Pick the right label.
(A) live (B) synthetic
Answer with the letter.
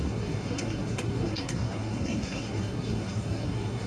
B